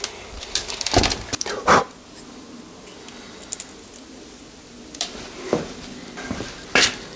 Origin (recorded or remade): recorded